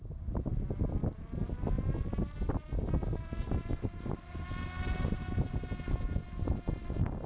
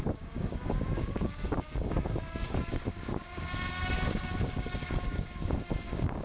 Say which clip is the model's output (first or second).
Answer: second